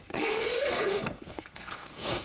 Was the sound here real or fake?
fake